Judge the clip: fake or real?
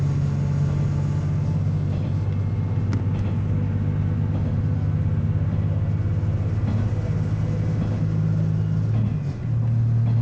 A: real